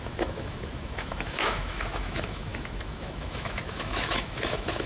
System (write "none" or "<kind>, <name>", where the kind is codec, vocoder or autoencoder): autoencoder, DAC-VAE